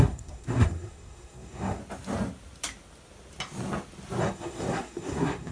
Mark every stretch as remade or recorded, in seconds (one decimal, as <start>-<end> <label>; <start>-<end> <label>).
0.0-1.8 remade; 1.8-4.2 recorded; 4.2-5.5 remade